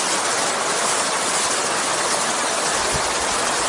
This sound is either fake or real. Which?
real